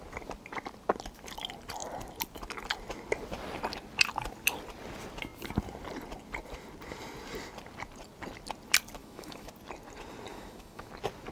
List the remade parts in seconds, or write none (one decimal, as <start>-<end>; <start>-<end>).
9.0-9.5; 10.3-10.9